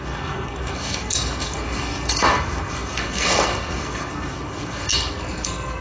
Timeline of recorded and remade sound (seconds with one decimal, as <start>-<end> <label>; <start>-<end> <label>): 0.0-5.8 remade